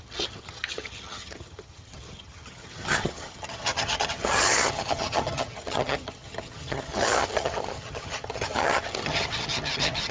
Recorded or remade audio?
remade